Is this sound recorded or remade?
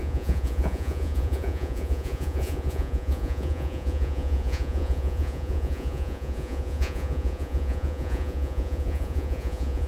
remade